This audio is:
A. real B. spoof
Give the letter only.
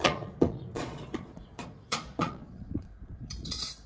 B